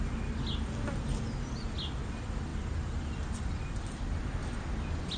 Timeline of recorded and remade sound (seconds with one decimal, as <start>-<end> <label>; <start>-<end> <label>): 0.0-5.2 recorded